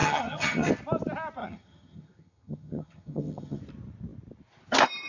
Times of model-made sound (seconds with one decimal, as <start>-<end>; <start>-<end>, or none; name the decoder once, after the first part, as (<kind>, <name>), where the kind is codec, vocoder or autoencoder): 0.0-0.7 (vocoder, HiFi-GAN); 1.4-3.6